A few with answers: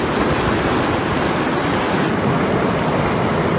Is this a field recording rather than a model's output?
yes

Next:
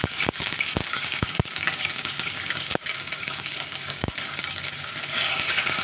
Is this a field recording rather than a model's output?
no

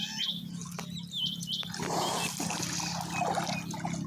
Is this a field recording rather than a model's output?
yes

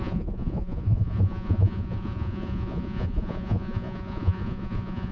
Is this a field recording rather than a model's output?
no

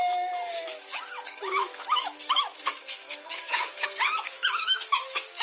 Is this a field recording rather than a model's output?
no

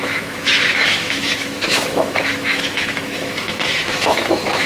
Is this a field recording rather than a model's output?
no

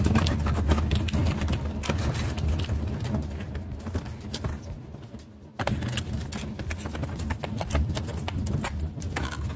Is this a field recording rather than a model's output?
yes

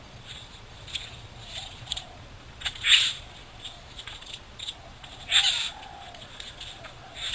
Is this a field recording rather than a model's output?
no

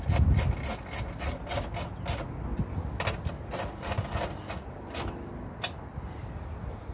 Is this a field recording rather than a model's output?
yes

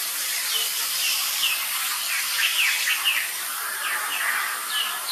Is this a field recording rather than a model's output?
no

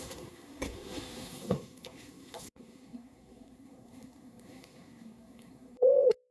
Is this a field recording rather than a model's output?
no